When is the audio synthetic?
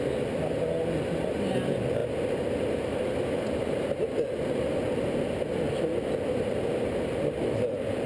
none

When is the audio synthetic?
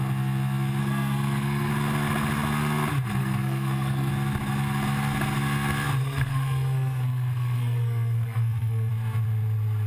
0.8-1.7 (codec, SNAC); 3.2-4.1; 6.0-8.9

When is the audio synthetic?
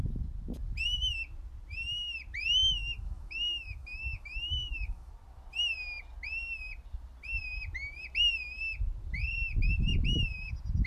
2.8-5.1 (autoencoder, DAC-VAE)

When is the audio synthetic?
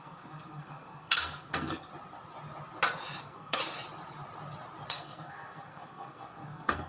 0.0-1.9 (codec, SNAC); 3.2-3.6; 4.9-6.9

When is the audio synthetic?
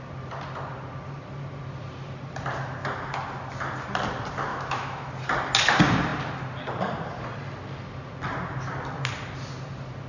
4.5-5.1 (autoencoder, DAC-VAE)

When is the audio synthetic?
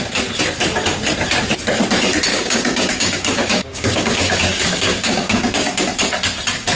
2.3-5.8 (codec, DAC)